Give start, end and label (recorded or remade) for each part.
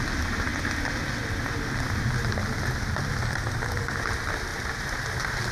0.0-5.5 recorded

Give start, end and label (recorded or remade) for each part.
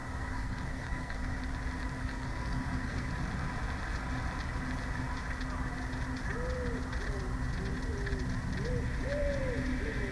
0.0-1.4 remade; 1.4-2.0 recorded; 2.0-3.1 remade; 3.1-10.1 recorded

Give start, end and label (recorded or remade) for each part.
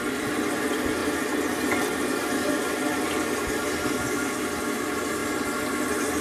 0.0-6.2 recorded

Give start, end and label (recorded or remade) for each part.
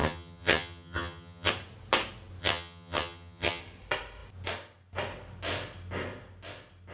0.0-1.5 remade; 1.5-2.4 recorded; 2.4-3.6 remade; 3.6-6.9 recorded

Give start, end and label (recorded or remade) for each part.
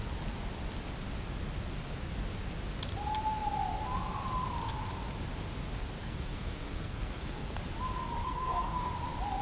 0.0-6.0 recorded; 6.0-7.6 remade; 7.6-8.2 recorded; 8.2-8.9 remade; 8.9-9.4 recorded